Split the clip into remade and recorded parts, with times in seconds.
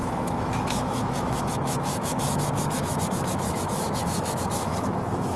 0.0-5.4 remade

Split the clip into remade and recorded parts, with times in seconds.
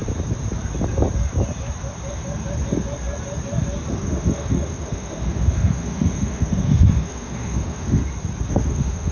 0.0-3.9 recorded; 3.9-8.0 remade; 8.0-8.5 recorded; 8.5-9.1 remade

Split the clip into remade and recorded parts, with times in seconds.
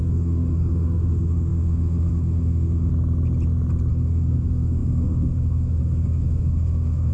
0.0-2.9 remade; 2.9-3.9 recorded; 3.9-7.1 remade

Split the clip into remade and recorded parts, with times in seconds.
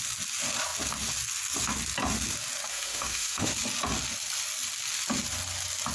0.0-2.7 recorded; 2.7-3.5 remade; 3.5-5.9 recorded